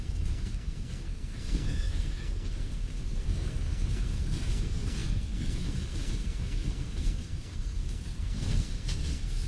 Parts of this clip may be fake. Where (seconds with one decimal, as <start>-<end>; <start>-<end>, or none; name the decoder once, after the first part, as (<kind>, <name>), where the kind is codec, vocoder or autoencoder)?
0.0-9.5 (codec, SNAC)